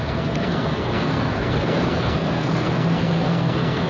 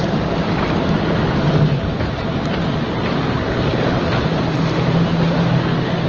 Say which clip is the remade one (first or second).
first